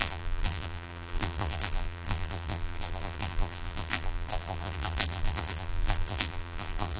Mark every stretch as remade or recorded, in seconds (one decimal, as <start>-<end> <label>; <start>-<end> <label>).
0.0-7.0 remade